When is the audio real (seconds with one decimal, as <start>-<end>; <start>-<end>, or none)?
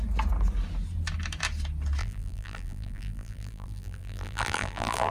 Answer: 0.0-2.0